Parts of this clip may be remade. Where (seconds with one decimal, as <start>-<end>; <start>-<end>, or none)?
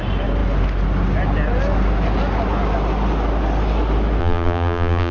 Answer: 4.2-5.1